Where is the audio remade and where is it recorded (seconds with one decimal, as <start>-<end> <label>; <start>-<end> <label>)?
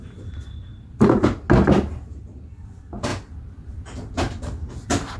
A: 0.0-5.2 recorded